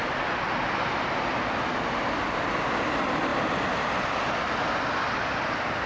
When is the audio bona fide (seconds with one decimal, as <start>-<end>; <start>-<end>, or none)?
0.0-5.9